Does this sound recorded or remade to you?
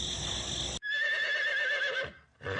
recorded